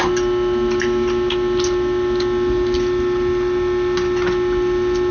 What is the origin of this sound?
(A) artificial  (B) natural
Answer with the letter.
B